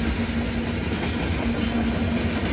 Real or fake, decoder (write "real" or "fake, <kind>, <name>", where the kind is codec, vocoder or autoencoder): real